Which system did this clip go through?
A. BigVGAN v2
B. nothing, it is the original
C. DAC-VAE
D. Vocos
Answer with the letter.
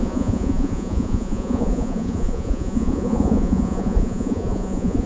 D